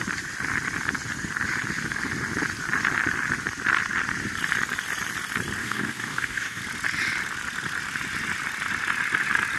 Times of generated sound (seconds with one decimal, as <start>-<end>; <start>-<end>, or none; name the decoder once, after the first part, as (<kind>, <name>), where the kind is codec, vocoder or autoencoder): 5.6-6.6 (codec, DAC)